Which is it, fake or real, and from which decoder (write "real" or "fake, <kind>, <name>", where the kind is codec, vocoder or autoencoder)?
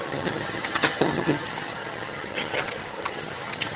fake, vocoder, HiFi-GAN